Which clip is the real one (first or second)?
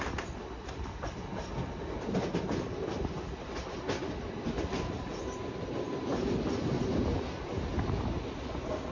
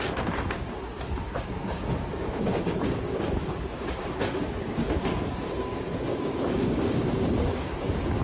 first